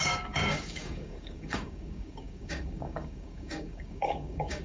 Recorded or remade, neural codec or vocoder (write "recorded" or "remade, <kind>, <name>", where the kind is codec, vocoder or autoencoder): remade, codec, DAC